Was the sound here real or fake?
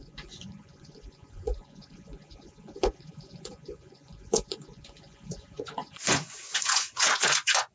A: fake